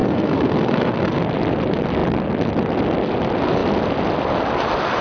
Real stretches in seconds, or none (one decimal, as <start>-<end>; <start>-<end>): 1.2-5.0